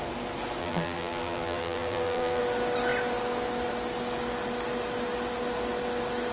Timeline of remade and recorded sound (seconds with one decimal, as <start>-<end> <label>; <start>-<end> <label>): 0.0-0.6 recorded; 0.6-2.4 remade; 2.4-6.3 recorded